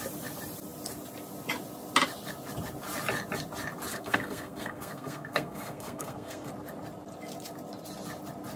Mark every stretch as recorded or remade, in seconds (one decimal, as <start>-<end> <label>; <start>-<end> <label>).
0.0-3.9 recorded; 3.9-6.5 remade; 6.5-8.6 recorded